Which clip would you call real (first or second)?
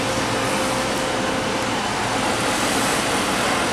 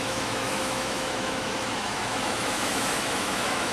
first